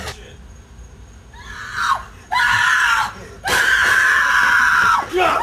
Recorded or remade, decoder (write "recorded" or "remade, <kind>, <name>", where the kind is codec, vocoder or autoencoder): recorded